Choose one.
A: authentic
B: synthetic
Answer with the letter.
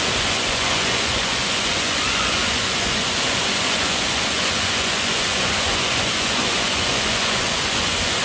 B